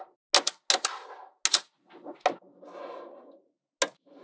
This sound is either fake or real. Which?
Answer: real